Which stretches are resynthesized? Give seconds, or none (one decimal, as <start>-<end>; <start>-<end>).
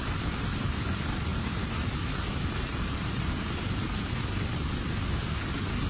1.3-4.1